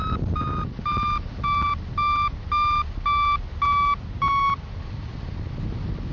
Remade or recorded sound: recorded